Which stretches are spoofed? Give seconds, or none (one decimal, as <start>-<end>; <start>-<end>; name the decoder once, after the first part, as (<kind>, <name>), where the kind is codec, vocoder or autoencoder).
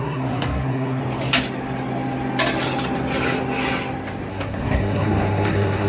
0.0-1.0 (codec, SNAC); 4.3-5.9